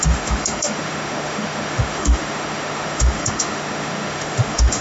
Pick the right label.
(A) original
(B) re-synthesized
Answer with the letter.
B